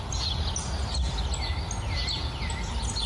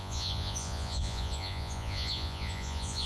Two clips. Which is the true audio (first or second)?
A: first